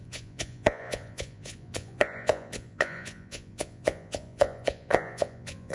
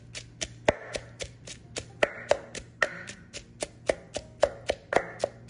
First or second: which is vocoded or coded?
first